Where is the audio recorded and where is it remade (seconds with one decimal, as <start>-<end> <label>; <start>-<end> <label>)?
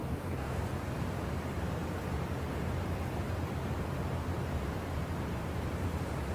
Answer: 0.0-0.6 remade; 0.6-6.3 recorded